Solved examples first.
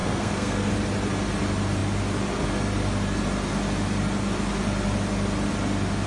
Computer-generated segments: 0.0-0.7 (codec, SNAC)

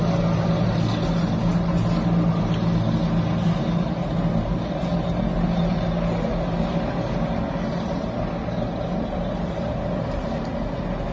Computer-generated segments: none

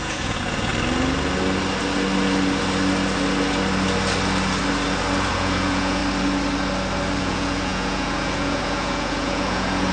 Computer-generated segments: 0.0-0.7 (vocoder, Vocos); 5.3-6.0; 7.2-9.9

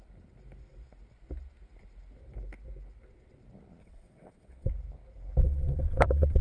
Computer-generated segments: 3.8-4.7 (vocoder, WaveNeXt); 5.4-6.4

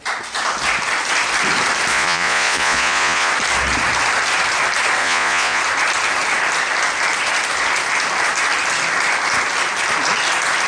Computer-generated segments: 1.9-3.3 (vocoder, Vocos); 5.0-5.6

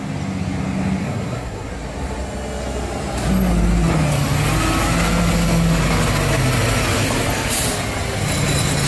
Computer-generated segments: 1.0-1.7 (codec, SNAC)

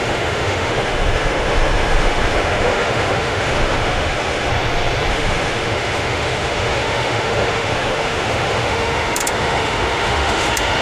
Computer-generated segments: 0.0-4.5 (autoencoder, DAC-VAE); 5.1-10.8

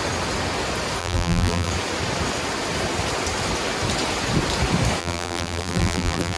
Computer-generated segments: 1.0-1.7 (vocoder, BigVGAN v2); 5.0-6.4